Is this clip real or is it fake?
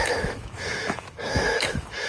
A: fake